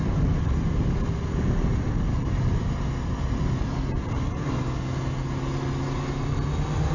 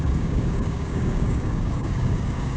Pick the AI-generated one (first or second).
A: second